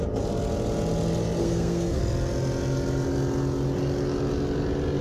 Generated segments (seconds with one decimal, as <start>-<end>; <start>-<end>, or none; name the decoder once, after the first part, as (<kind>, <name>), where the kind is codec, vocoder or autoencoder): 1.4-2.0 (codec, SNAC)